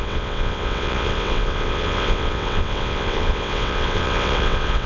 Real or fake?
fake